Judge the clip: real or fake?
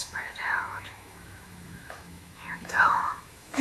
fake